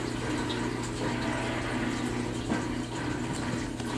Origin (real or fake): real